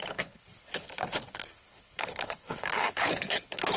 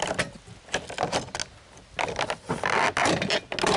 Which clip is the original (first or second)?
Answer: second